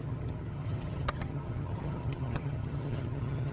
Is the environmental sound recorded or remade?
remade